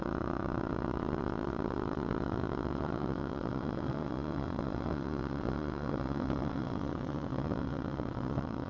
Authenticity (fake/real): fake